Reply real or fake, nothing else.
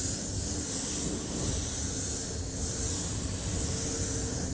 real